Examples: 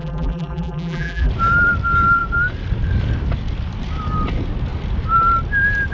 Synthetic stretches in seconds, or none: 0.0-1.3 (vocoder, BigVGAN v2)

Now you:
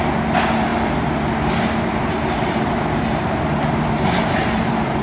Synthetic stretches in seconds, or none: 2.0-5.0 (vocoder, BigVGAN v2)

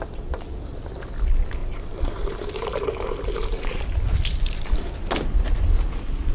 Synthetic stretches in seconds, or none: 1.6-4.9 (vocoder, BigVGAN v2)

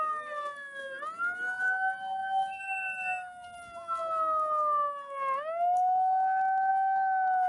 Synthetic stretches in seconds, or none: none

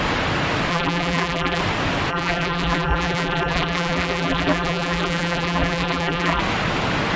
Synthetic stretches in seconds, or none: 0.7-1.6 (vocoder, BigVGAN v2); 2.1-6.4

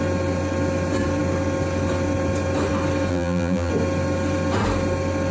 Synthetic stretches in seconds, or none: 3.1-3.7 (vocoder, BigVGAN v2)

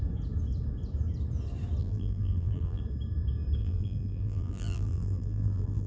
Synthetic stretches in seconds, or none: 1.8-2.8 (vocoder, BigVGAN v2); 3.6-5.9